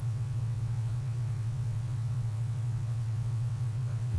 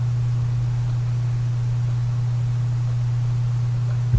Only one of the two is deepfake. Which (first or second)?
first